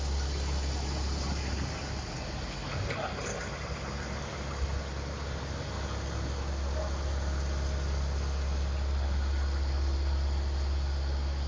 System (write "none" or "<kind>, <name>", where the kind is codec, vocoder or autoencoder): none